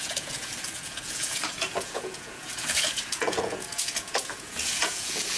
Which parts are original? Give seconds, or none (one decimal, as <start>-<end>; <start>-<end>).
none